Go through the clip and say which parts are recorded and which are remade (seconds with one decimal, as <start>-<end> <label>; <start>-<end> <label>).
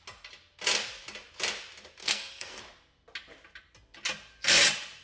0.0-2.0 recorded; 2.0-2.6 remade; 2.6-5.0 recorded